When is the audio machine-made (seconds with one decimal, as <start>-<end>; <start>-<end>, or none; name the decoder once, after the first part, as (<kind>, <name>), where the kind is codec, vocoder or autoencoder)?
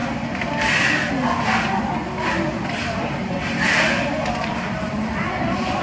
0.0-1.1 (vocoder, BigVGAN v2); 2.8-5.8